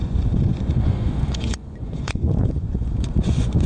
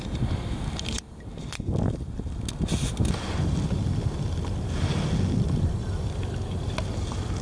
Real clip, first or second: second